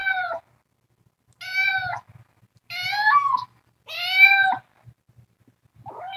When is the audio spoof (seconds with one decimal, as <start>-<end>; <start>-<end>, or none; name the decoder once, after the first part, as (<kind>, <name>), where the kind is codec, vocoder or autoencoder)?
none